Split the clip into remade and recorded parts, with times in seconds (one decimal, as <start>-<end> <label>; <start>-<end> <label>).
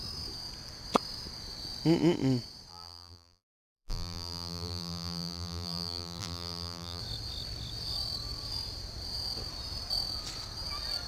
0.0-2.7 recorded; 2.7-7.0 remade; 7.0-11.1 recorded